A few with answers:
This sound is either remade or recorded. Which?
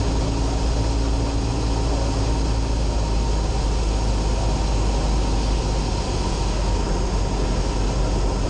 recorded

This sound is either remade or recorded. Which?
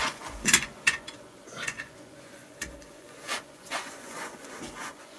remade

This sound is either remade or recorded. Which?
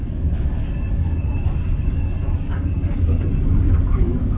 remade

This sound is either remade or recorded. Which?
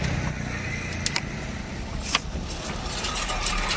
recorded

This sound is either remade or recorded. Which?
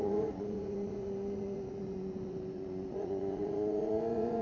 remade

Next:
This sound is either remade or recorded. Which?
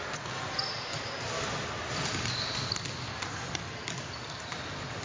recorded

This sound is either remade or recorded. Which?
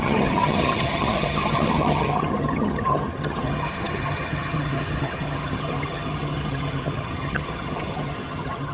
remade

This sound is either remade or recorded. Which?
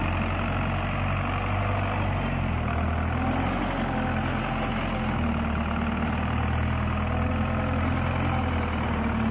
recorded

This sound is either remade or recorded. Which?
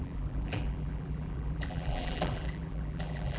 remade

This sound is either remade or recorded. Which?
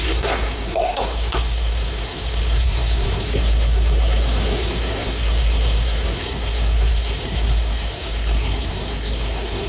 remade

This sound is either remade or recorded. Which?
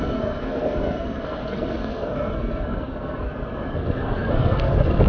remade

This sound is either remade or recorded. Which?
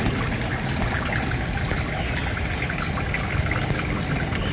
recorded